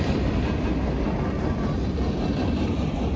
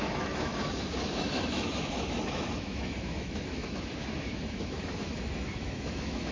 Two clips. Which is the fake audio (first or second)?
second